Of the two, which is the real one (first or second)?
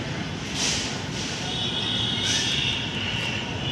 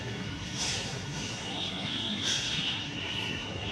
first